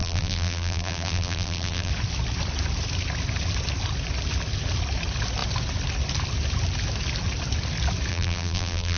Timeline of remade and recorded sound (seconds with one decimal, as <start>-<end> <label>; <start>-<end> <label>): 0.0-1.9 remade; 1.9-8.1 recorded; 8.1-9.0 remade